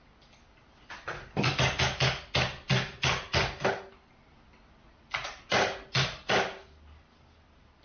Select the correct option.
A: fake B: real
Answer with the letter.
B